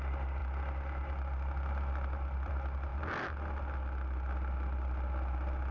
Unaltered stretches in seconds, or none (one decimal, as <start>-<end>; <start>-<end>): 2.9-5.7